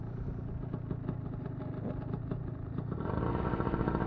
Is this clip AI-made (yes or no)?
no